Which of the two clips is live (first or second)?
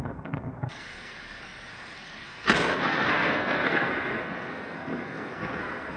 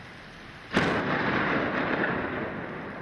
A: second